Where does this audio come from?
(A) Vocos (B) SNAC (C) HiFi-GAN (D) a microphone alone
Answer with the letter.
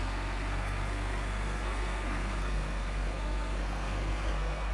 B